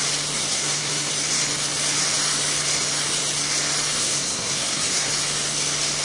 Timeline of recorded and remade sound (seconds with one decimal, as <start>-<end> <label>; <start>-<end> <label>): 0.0-0.5 recorded; 0.5-1.1 remade; 1.1-4.0 recorded; 4.0-5.1 remade; 5.1-6.0 recorded